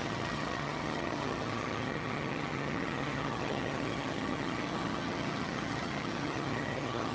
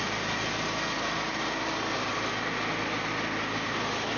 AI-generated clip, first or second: first